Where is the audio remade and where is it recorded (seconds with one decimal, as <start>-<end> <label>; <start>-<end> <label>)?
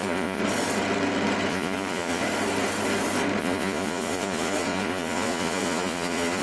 0.0-0.4 remade; 0.4-1.5 recorded; 1.5-2.2 remade; 2.2-3.4 recorded; 3.4-6.4 remade